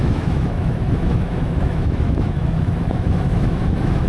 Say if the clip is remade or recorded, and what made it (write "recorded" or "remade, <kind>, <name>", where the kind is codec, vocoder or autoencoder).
remade, autoencoder, DAC-VAE